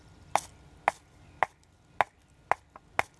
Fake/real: real